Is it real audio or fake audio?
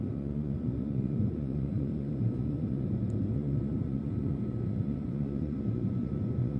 fake